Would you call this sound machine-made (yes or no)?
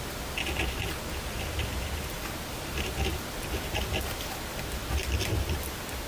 no